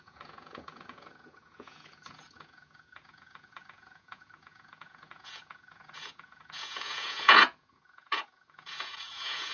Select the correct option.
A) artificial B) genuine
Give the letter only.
A